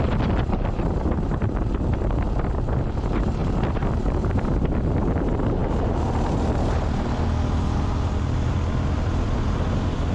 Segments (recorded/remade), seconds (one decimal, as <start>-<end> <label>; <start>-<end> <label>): 0.0-10.1 recorded